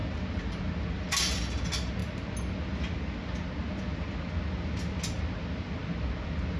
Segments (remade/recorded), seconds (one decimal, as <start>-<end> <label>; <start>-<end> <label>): 0.0-6.6 recorded